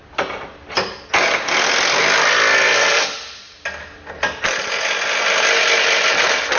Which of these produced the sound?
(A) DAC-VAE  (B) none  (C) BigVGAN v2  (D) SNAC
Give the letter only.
B